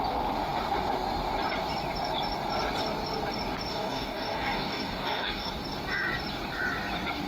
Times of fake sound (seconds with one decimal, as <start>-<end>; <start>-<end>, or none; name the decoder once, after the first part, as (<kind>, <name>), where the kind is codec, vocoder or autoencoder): 3.7-5.5 (codec, DAC)